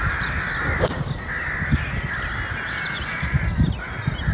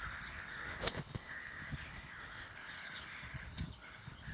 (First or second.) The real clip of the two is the first